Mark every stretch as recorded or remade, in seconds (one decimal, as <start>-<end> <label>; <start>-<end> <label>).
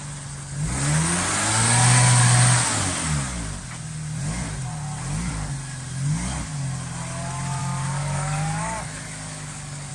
0.0-7.6 recorded; 7.6-9.9 remade